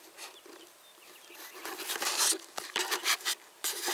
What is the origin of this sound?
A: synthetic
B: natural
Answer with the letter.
A